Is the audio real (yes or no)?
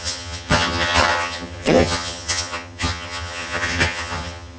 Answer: no